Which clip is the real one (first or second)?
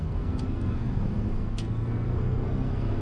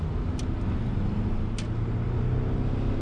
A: second